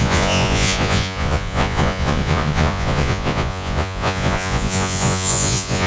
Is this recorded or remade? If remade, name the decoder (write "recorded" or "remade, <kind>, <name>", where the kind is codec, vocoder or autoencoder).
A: remade, vocoder, Vocos